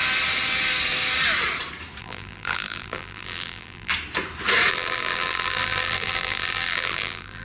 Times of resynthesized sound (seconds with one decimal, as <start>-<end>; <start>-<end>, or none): 2.0-3.9; 4.7-7.4